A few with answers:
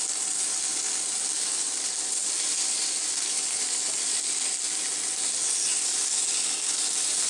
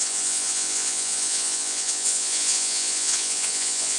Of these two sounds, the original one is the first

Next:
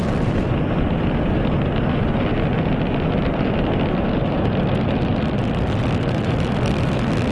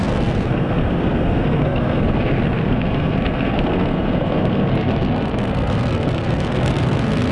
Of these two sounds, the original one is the first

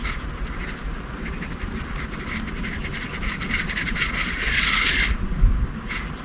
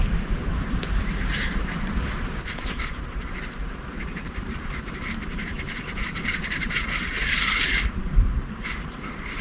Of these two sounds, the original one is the first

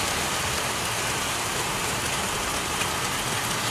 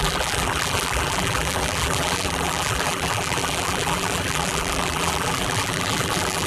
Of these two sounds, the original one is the first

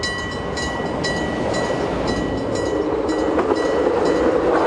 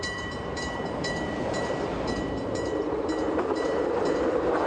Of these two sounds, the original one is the first